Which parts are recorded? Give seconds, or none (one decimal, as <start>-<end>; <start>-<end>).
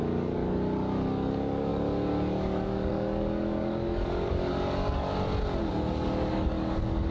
5.1-5.7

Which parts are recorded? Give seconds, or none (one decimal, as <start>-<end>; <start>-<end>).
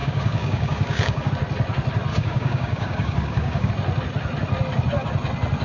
1.3-2.1; 3.7-5.6